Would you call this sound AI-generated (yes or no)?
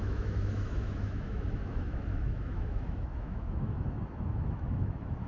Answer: yes